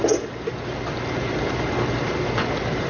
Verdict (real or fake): real